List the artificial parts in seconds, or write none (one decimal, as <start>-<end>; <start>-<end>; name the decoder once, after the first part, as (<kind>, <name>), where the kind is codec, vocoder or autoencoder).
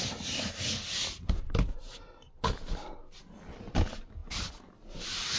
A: none